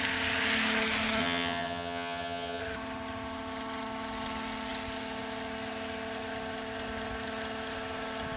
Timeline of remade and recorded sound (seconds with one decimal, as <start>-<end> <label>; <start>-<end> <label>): 0.0-1.2 recorded; 1.2-2.6 remade; 2.6-8.4 recorded